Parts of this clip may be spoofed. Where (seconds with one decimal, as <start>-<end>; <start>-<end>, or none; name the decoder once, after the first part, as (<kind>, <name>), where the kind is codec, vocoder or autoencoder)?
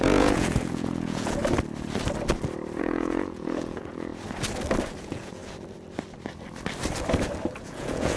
0.0-1.4 (vocoder, Vocos); 2.8-4.1; 5.0-5.4; 7.6-8.2